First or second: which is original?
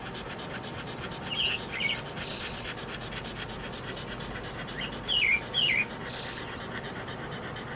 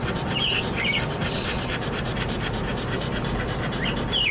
first